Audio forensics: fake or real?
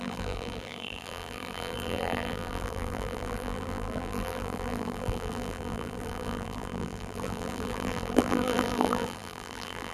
fake